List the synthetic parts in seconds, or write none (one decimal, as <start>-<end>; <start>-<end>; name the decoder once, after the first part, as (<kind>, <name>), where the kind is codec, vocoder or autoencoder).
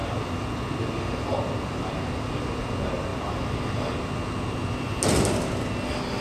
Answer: none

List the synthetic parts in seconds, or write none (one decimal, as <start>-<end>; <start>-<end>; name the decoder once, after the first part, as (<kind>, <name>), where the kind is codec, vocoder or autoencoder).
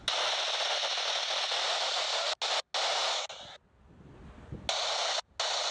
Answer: none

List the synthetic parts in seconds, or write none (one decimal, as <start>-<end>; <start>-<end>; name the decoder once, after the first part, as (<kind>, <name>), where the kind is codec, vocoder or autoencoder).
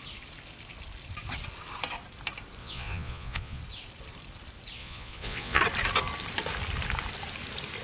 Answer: 2.6-3.6 (vocoder, Vocos); 4.8-5.6